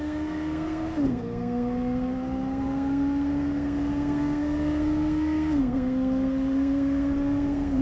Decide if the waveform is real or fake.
fake